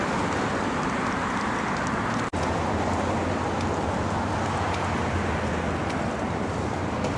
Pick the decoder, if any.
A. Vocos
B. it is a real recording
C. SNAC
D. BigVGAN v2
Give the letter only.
B